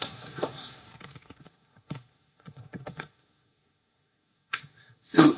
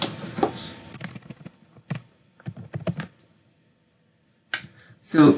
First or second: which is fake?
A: first